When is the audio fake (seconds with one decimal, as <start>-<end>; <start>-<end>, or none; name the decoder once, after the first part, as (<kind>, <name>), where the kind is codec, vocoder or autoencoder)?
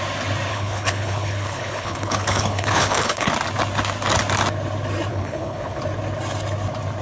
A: 0.5-3.3 (codec, HILCodec); 5.1-5.8